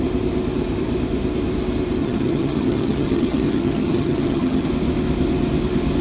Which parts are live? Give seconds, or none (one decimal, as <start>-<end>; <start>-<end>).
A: 0.0-2.0; 4.7-6.0